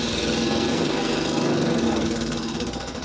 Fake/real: fake